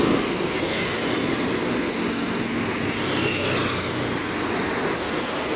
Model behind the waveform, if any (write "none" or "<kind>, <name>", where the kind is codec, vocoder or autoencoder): none